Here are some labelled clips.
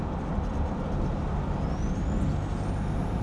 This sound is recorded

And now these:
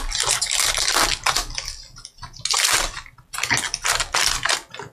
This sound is recorded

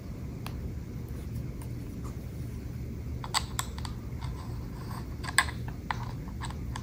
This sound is recorded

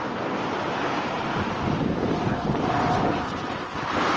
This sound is recorded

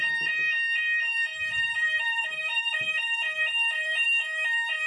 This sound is remade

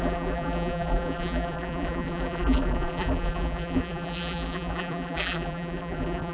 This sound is remade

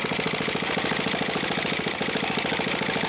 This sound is remade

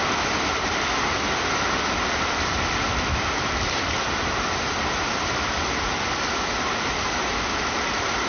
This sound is recorded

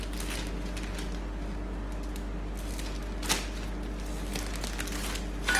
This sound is recorded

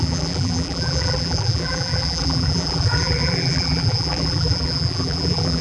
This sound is remade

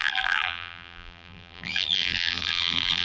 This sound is remade